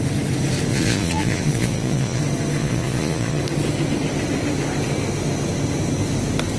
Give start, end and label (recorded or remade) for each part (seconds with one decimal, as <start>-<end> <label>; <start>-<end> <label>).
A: 0.0-0.7 recorded; 0.7-2.2 remade; 2.2-2.6 recorded; 2.6-3.4 remade; 3.4-6.6 recorded